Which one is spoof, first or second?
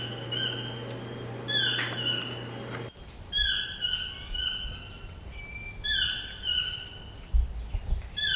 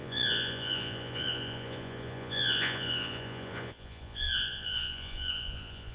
second